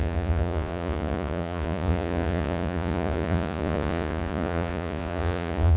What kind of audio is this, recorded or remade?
remade